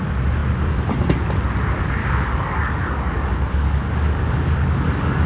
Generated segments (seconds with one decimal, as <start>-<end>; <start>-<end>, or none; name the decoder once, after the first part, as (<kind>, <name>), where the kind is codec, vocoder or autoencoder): 2.0-5.3 (codec, DAC)